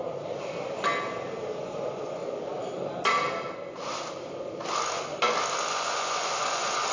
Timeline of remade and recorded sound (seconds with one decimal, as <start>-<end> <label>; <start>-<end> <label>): 0.0-1.6 recorded; 1.6-2.2 remade; 2.2-5.7 recorded; 5.7-6.9 remade